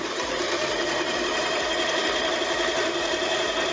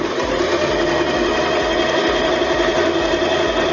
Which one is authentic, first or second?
second